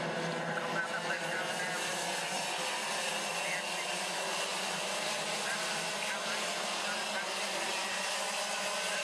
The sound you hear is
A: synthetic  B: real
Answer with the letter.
B